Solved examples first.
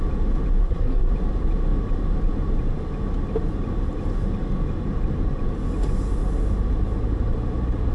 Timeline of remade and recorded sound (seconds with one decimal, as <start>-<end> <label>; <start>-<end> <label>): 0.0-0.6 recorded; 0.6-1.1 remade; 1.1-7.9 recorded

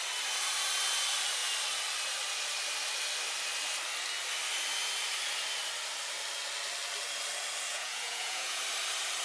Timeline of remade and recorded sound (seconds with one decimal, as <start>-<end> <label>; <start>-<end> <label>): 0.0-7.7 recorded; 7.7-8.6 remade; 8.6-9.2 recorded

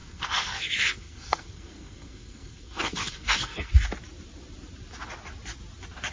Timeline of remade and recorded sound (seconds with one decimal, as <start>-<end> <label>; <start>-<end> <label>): 0.0-3.7 remade; 3.7-6.1 recorded

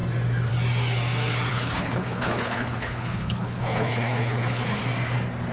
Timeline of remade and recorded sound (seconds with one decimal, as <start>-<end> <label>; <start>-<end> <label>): 0.0-1.5 recorded; 1.5-4.8 remade; 4.8-5.5 recorded

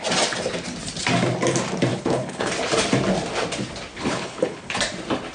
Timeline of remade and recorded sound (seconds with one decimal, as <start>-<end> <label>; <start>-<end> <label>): 0.0-1.9 recorded; 1.9-2.5 remade; 2.5-3.9 recorded; 3.9-4.8 remade; 4.8-5.3 recorded